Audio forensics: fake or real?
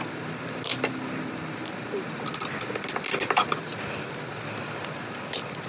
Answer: real